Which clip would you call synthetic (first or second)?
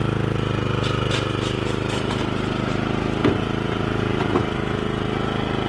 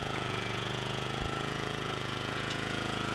second